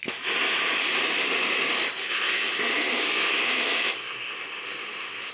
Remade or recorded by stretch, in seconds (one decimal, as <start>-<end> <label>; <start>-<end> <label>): 0.0-2.0 recorded; 2.0-5.3 remade